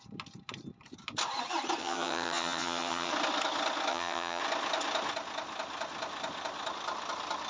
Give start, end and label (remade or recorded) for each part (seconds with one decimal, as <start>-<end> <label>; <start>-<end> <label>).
0.0-1.8 recorded; 1.8-3.1 remade; 3.1-3.9 recorded; 3.9-4.4 remade; 4.4-7.5 recorded